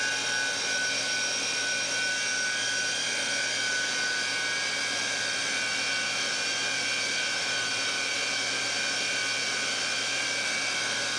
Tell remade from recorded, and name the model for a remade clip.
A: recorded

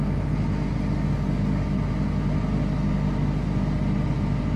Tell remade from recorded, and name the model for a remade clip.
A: recorded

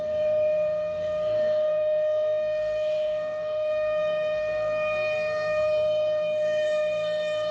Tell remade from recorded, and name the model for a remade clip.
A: remade, codec, SNAC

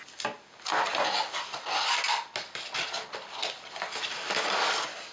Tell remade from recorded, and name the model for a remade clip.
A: recorded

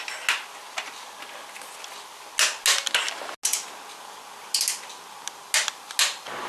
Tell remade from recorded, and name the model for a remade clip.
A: recorded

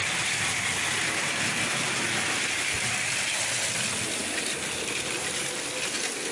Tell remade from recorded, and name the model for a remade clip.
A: recorded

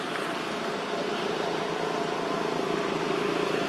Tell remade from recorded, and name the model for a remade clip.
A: recorded